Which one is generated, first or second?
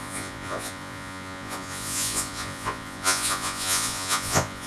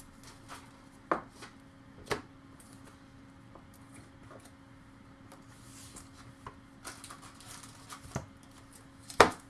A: first